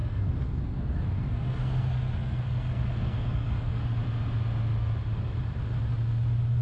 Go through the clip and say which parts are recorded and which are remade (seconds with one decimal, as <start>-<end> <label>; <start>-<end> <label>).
0.0-4.0 remade; 4.0-6.6 recorded